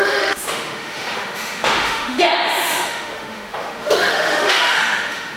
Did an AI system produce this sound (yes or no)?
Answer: yes